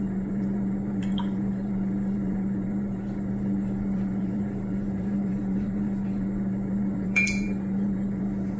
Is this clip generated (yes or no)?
yes